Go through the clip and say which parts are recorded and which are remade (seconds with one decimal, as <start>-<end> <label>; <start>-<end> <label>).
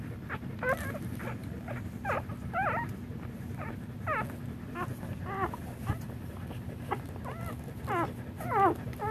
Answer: 0.0-9.1 recorded